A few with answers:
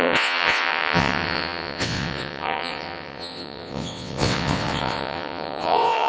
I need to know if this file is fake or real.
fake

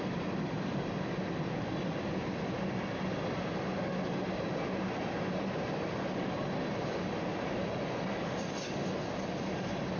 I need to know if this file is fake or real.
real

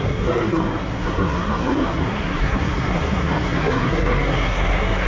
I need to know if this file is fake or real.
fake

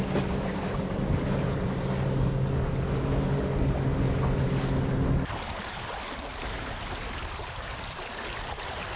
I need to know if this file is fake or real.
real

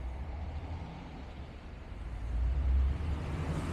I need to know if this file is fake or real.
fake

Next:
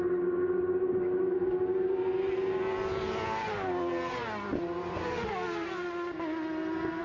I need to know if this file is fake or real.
real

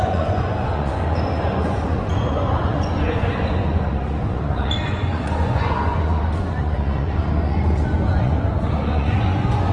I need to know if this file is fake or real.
fake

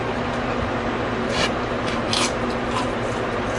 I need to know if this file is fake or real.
fake